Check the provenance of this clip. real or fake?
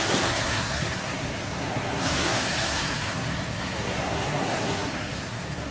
fake